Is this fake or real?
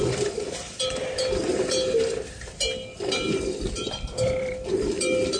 fake